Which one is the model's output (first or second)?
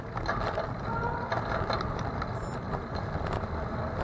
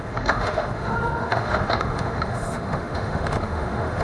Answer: second